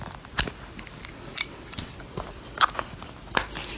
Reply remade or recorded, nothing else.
recorded